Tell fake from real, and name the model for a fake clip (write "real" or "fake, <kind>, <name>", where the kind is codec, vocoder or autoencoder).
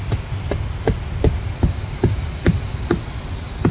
real